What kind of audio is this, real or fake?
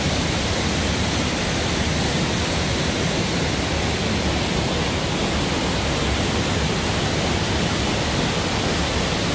real